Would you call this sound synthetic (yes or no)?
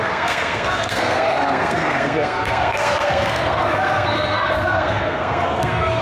yes